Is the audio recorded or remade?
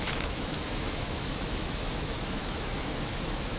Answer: remade